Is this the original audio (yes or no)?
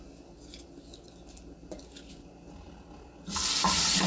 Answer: yes